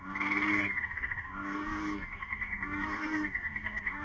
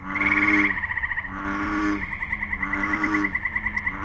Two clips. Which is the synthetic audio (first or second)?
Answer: first